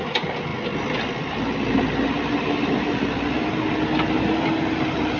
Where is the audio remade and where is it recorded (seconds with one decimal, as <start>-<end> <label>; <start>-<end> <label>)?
0.0-5.2 recorded